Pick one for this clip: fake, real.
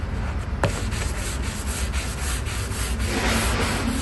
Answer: real